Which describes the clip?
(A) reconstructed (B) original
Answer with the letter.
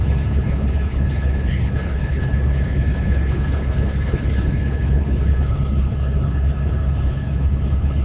A